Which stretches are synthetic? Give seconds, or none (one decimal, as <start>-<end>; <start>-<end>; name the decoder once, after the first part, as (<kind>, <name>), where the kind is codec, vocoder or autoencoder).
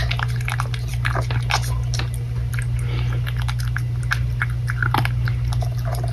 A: none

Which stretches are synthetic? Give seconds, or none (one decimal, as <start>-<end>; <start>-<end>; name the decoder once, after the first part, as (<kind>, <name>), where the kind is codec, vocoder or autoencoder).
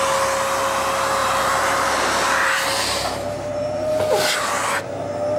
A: 1.2-4.0 (vocoder, BigVGAN v2)